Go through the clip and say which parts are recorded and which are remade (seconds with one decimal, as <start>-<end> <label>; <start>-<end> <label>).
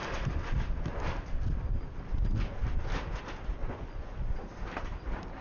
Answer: 0.0-3.6 recorded; 3.6-4.3 remade; 4.3-5.4 recorded